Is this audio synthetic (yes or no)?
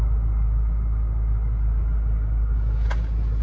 no